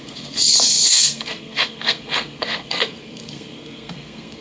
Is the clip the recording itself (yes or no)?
no